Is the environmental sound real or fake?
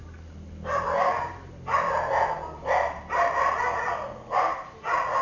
real